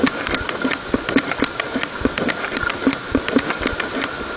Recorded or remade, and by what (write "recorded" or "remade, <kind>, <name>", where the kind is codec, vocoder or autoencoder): recorded